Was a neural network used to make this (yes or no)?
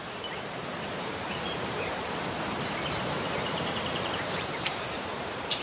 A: yes